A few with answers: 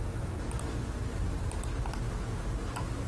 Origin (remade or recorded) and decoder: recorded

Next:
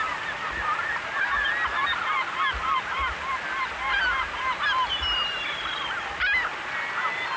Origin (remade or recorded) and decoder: recorded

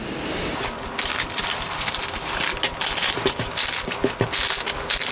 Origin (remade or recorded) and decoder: recorded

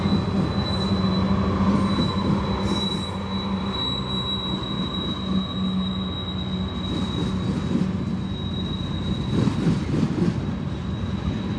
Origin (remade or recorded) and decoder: recorded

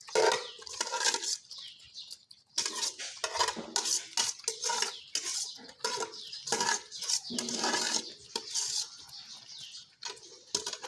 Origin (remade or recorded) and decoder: recorded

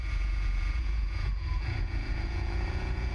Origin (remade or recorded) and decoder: remade, vocoder, Vocos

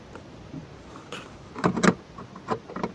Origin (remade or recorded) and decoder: recorded